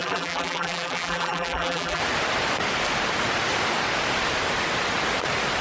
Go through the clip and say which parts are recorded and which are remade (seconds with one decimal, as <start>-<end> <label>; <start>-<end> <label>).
0.0-2.0 remade; 2.0-5.6 recorded